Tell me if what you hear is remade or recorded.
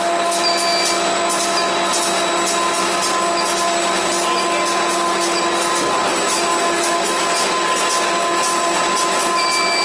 recorded